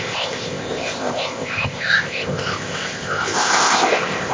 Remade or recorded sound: remade